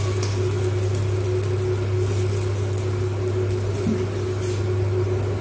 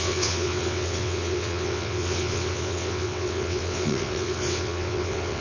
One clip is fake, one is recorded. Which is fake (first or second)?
second